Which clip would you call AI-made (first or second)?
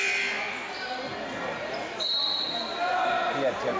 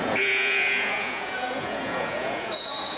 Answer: second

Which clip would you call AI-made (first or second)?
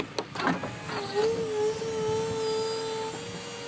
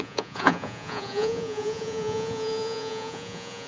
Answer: second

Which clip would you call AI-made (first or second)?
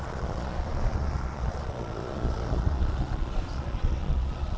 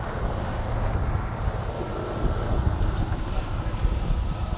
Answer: first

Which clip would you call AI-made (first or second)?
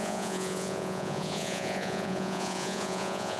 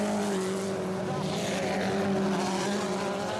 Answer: first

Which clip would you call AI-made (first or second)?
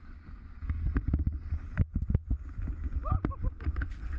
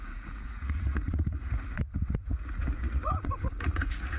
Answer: second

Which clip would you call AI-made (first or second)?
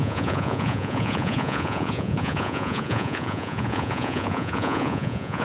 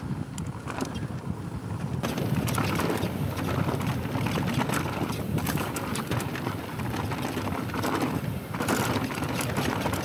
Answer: first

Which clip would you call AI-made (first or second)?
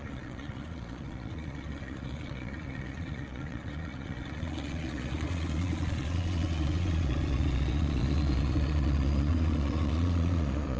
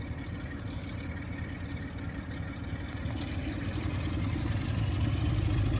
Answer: first